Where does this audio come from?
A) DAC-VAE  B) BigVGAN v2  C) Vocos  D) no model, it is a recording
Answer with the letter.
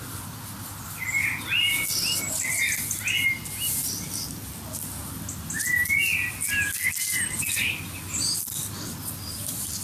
D